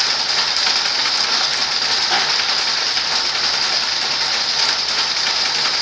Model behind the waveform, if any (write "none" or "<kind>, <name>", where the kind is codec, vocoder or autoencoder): none